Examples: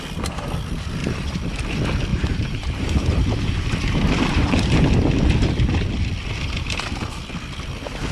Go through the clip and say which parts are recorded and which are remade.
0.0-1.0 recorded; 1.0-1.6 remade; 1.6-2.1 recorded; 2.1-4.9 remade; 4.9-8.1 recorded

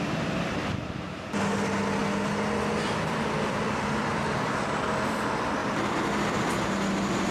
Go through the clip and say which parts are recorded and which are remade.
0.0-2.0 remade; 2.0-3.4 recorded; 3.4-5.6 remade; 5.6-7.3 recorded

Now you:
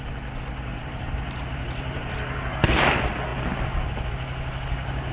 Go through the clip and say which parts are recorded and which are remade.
0.0-0.7 recorded; 0.7-2.7 remade; 2.7-5.1 recorded

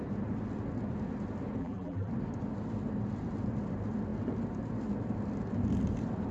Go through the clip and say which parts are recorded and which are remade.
0.0-1.6 recorded; 1.6-2.1 remade; 2.1-6.3 recorded